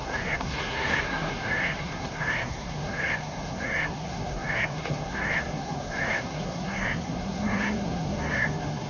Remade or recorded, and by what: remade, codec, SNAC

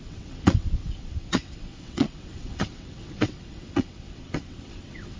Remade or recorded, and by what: remade, vocoder, WaveNeXt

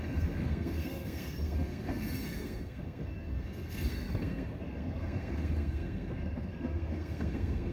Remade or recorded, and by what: remade, codec, SNAC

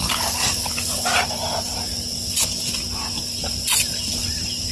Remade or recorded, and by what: recorded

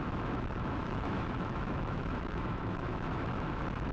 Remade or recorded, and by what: remade, autoencoder, DAC-VAE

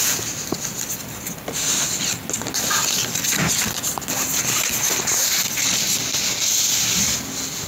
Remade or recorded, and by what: recorded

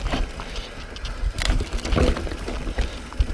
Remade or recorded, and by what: recorded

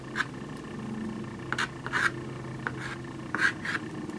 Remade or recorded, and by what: recorded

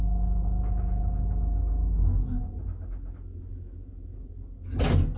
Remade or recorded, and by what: recorded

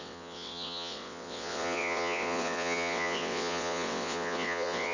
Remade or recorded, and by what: remade, vocoder, WaveNeXt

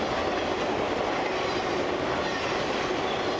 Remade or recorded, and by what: recorded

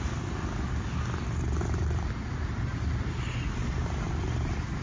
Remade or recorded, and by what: recorded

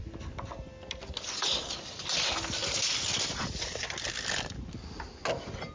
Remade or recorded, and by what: recorded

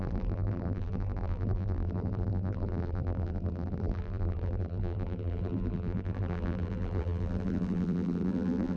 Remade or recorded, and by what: remade, vocoder, BigVGAN v2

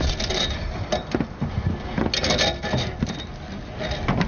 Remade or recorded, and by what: recorded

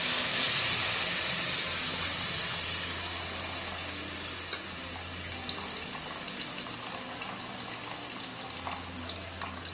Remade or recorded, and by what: recorded